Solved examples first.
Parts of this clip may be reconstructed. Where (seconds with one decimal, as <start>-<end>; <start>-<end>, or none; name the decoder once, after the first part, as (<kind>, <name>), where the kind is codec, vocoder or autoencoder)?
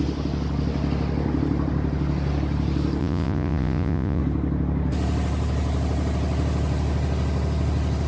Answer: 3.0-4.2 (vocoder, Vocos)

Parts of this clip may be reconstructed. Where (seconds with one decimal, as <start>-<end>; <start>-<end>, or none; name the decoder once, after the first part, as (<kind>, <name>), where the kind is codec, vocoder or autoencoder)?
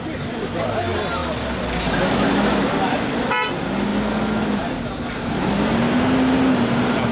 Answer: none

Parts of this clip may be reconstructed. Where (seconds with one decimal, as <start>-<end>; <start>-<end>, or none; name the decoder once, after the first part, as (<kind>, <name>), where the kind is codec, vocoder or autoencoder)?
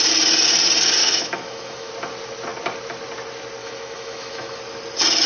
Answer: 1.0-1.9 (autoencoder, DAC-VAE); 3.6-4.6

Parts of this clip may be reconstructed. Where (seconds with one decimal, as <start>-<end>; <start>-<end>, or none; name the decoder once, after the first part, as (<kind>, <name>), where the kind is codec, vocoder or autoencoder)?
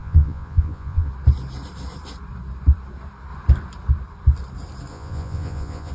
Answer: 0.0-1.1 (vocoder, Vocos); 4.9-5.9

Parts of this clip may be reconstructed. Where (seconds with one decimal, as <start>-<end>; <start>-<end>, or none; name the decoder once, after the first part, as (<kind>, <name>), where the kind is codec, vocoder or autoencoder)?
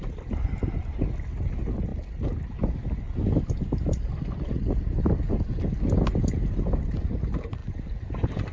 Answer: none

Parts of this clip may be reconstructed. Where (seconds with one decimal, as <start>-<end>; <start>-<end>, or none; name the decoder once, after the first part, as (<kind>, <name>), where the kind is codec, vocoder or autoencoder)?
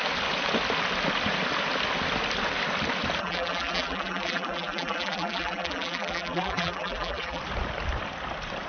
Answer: 3.2-7.4 (vocoder, BigVGAN v2)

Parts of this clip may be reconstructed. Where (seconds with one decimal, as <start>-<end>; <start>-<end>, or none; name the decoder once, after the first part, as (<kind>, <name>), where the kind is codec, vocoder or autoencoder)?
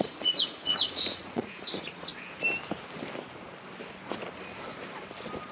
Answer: 0.0-2.1 (vocoder, Vocos)